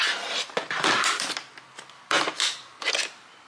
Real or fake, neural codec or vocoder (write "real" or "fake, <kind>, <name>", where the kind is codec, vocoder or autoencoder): real